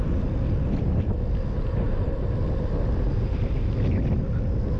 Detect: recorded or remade recorded